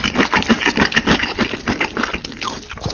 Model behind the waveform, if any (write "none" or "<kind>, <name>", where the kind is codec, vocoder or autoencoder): none